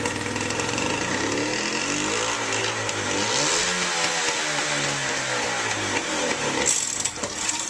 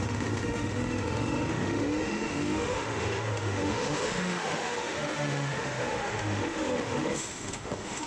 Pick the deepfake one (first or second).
second